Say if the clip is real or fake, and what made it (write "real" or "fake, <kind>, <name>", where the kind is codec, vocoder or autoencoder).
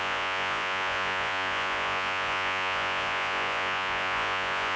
fake, vocoder, Vocos